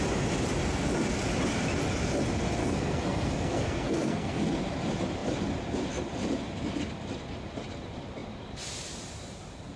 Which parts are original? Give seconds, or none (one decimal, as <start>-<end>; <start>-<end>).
0.0-2.6; 4.6-9.8